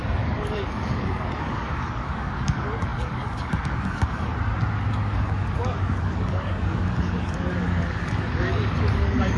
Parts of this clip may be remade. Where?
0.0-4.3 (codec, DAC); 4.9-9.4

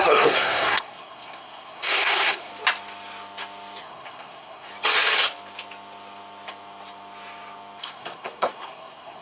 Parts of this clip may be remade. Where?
0.0-2.5 (codec, SNAC); 3.8-4.7; 7.8-9.2

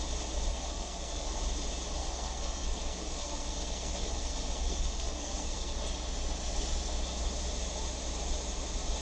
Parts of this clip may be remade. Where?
0.5-1.4 (codec, SNAC); 2.0-5.8

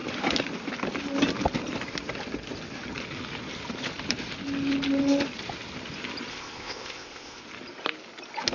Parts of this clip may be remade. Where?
6.3-7.4 (codec, ZipCodec)